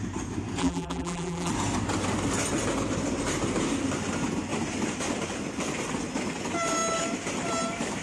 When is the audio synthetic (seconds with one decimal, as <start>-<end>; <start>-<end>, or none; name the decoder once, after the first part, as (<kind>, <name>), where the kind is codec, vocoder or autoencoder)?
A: 0.6-1.5 (vocoder, BigVGAN v2)